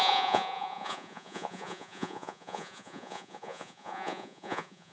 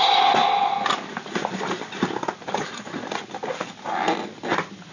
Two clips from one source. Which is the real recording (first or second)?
second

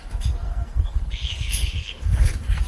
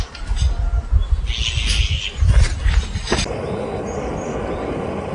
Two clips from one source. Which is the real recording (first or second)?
second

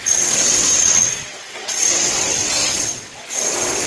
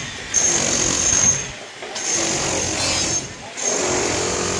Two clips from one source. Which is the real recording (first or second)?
second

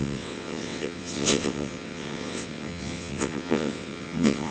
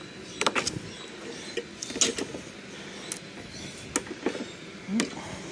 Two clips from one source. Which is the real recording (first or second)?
second